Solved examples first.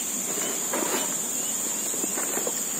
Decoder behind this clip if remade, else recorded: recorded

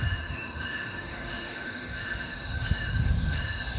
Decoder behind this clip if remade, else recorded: remade, autoencoder, DAC-VAE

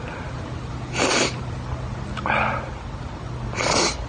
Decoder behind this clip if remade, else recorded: recorded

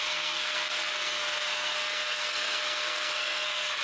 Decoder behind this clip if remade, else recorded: remade, codec, SNAC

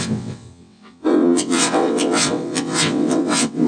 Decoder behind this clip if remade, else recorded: remade, vocoder, WaveNeXt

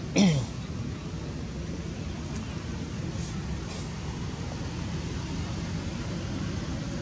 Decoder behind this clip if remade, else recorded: recorded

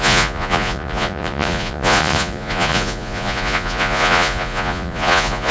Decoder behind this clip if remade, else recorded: remade, vocoder, Vocos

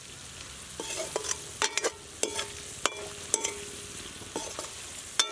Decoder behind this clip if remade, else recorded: recorded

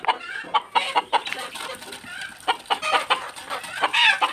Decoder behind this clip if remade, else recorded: recorded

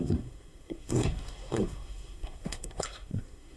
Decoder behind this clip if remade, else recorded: remade, codec, SNAC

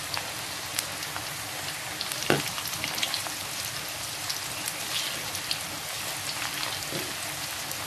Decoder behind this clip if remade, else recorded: recorded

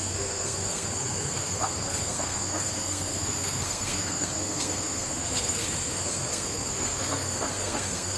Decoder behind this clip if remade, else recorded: remade, codec, SNAC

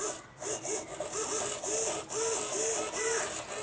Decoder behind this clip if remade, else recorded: recorded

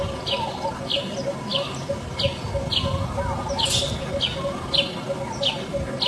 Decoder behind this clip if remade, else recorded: recorded